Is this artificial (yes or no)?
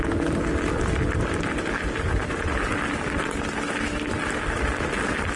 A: no